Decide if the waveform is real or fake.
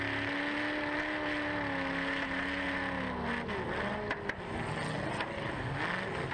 real